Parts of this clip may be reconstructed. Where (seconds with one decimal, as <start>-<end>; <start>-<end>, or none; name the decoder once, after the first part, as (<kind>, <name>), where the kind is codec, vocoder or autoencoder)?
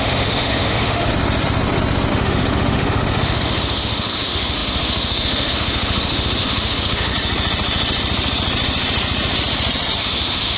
0.0-1.1 (autoencoder, DAC-VAE); 2.1-7.1; 10.0-10.6